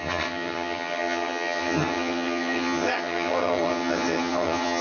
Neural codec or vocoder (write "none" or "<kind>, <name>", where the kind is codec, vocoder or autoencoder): vocoder, HiFi-GAN